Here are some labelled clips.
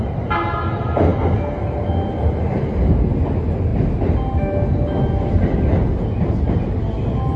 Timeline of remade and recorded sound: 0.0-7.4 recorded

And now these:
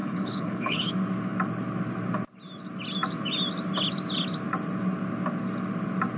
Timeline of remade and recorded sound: 0.0-0.9 remade; 0.9-6.2 recorded

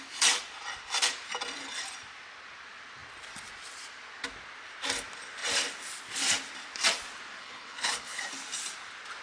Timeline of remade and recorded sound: 0.0-7.4 recorded; 7.4-8.2 remade; 8.2-9.2 recorded